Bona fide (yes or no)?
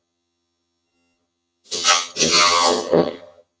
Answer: no